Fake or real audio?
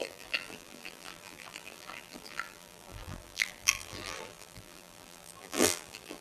fake